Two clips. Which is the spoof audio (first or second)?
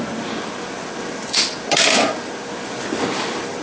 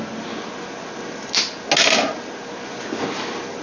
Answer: first